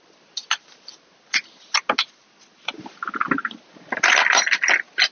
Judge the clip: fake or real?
real